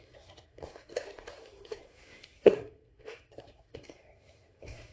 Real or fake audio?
fake